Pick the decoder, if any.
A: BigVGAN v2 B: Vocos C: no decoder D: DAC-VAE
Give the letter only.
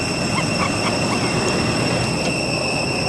C